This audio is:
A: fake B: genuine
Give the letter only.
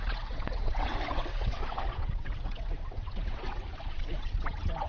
A